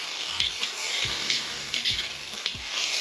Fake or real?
fake